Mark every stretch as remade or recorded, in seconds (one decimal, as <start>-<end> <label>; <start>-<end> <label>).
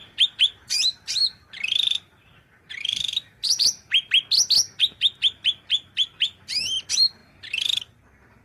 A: 0.0-3.9 remade; 3.9-8.4 recorded